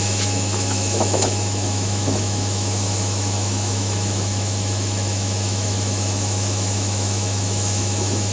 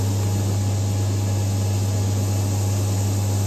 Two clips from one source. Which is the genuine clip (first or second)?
second